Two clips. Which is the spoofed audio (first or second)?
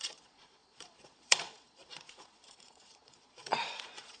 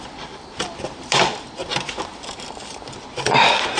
first